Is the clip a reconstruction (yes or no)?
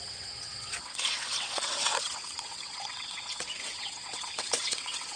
yes